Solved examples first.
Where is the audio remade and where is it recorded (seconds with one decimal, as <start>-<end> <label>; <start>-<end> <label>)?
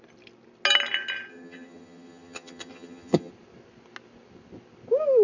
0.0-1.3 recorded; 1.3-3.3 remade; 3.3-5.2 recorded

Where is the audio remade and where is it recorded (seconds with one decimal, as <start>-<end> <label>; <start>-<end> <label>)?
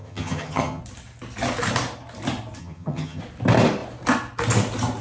0.0-0.8 remade; 0.8-2.6 recorded; 2.6-3.2 remade; 3.2-5.0 recorded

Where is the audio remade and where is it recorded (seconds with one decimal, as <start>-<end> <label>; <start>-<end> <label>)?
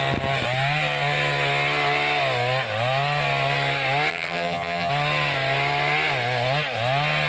0.0-4.1 recorded; 4.1-4.9 remade; 4.9-7.3 recorded